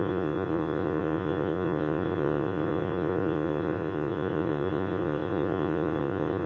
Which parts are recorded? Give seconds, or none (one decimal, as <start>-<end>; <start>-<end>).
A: none

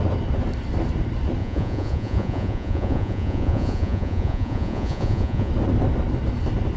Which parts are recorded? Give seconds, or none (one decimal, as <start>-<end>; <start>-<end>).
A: 0.0-1.4; 5.5-6.8

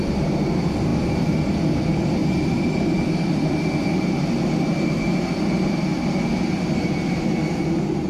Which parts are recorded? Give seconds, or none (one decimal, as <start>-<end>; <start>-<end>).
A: 0.0-8.1